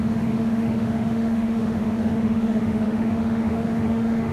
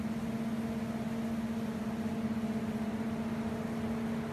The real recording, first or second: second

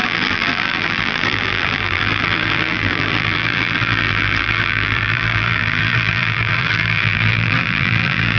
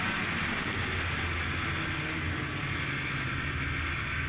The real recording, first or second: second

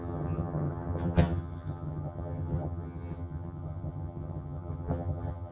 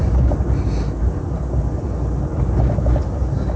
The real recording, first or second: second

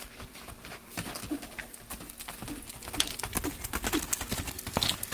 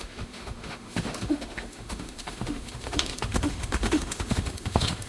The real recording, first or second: first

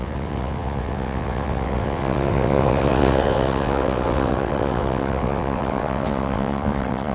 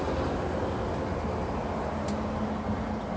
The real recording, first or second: second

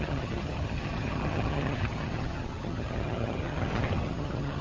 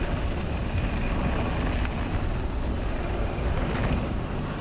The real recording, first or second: second